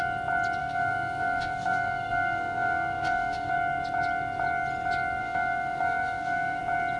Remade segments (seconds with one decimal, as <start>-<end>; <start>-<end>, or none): 0.6-3.5; 5.2-6.6